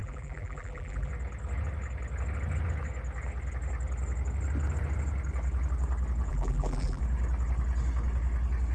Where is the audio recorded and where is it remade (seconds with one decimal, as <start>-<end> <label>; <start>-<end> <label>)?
0.0-1.1 remade; 1.1-6.3 recorded; 6.3-7.0 remade; 7.0-8.7 recorded